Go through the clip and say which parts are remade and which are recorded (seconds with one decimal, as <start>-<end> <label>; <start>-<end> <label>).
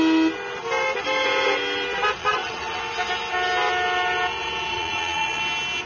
0.0-2.2 recorded; 2.2-2.8 remade; 2.8-4.7 recorded; 4.7-5.4 remade; 5.4-5.9 recorded